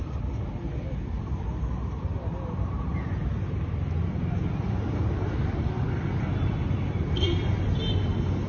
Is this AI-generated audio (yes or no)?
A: no